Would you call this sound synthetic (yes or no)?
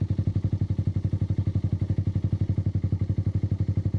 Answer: no